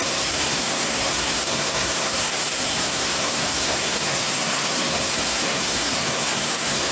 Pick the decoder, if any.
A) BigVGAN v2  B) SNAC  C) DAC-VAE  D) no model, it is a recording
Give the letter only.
B